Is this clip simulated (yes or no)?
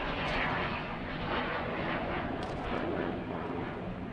yes